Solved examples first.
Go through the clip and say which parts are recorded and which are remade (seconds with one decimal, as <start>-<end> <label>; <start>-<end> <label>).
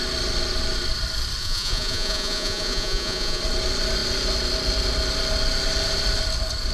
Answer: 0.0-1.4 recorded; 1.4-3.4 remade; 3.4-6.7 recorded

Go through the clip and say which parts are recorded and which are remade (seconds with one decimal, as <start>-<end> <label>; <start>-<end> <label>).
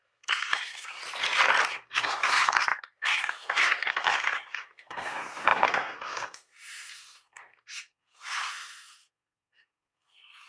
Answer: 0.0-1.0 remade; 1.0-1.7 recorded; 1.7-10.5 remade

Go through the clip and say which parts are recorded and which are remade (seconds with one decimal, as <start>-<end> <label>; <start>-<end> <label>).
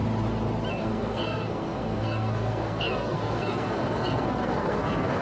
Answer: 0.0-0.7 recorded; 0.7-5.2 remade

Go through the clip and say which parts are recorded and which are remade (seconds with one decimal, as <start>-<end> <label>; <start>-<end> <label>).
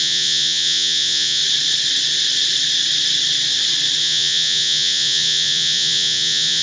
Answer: 0.0-1.4 remade; 1.4-4.0 recorded; 4.0-6.6 remade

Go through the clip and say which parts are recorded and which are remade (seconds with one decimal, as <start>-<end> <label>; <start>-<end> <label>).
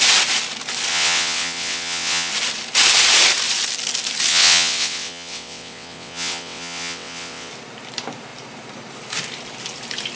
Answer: 0.0-0.9 recorded; 0.9-2.3 remade; 2.3-4.3 recorded; 4.3-7.5 remade; 7.5-10.2 recorded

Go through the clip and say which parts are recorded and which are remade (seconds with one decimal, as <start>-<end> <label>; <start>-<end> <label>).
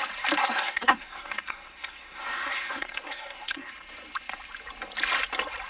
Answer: 0.0-0.4 recorded; 0.4-3.7 remade; 3.7-5.7 recorded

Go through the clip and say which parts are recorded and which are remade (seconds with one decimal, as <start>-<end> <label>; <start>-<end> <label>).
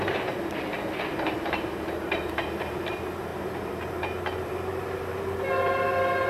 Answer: 0.0-6.3 remade